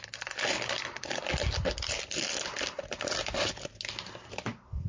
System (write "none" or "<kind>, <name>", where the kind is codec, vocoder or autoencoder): none